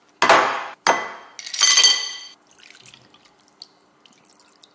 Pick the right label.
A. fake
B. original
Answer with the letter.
B